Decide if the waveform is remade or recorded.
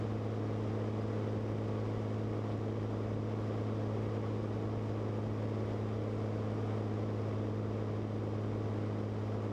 recorded